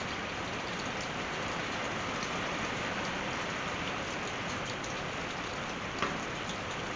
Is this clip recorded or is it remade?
remade